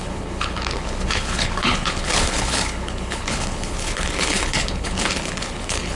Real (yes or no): no